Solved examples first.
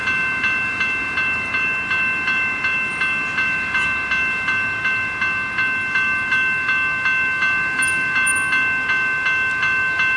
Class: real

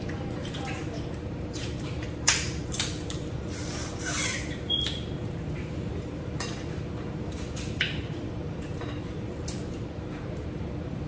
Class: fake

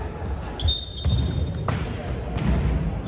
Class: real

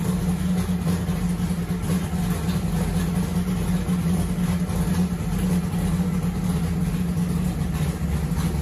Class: real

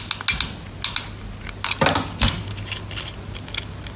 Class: real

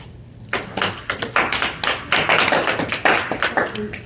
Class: real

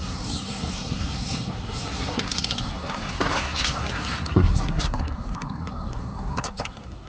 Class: fake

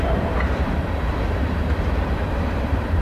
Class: fake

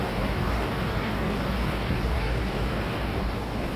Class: fake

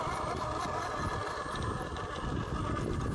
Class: real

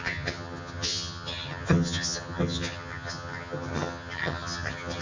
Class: fake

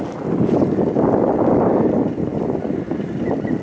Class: real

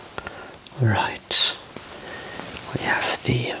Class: real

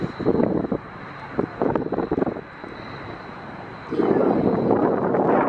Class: real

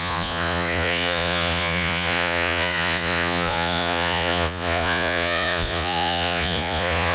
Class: fake